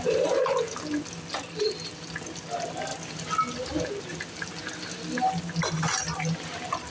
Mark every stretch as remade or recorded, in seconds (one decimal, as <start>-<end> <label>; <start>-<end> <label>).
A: 0.0-6.9 recorded